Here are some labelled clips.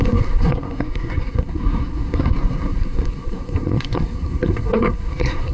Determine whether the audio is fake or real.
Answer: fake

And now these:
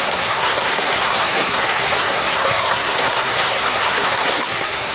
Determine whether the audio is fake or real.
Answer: fake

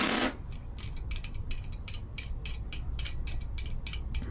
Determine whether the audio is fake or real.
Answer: real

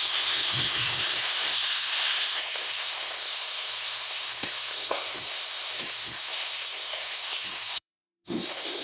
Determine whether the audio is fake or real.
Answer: fake